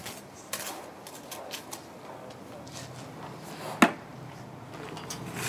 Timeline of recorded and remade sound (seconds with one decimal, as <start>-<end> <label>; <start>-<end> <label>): 0.0-5.5 recorded